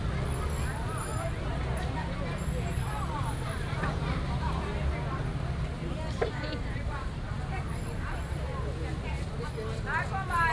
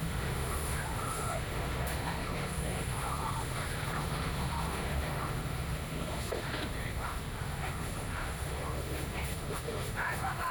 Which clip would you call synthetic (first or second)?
second